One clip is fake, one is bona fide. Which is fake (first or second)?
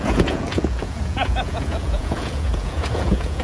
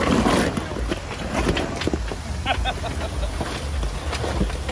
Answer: first